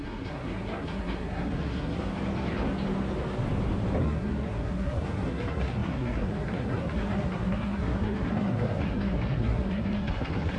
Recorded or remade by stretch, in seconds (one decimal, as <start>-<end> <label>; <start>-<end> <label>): 0.0-2.1 remade; 2.1-4.0 recorded; 4.0-10.6 remade